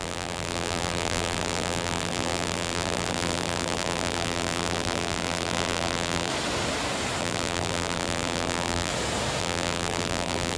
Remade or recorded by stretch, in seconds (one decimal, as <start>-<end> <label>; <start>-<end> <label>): 0.0-6.3 remade; 6.3-7.2 recorded; 7.2-8.9 remade; 8.9-9.4 recorded; 9.4-10.6 remade